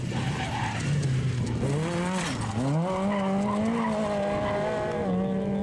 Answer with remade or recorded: recorded